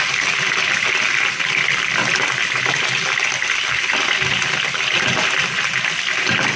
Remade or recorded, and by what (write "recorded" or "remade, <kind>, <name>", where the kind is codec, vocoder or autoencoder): recorded